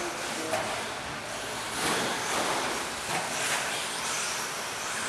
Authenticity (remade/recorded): recorded